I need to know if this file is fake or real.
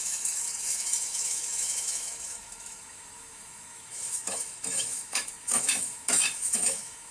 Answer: fake